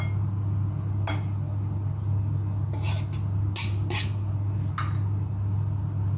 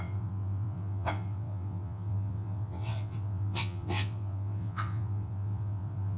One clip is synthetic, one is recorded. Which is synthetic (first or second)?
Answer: second